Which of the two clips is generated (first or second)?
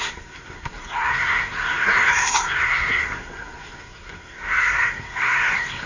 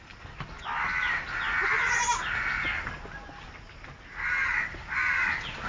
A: first